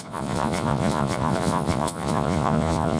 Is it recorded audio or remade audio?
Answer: remade